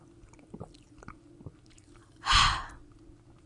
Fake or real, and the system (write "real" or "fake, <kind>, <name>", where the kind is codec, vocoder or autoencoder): real